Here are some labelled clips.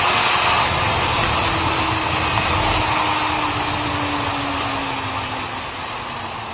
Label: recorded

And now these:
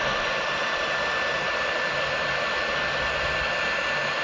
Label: recorded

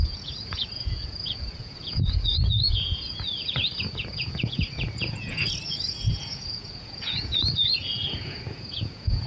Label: remade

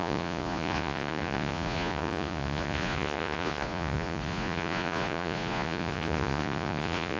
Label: remade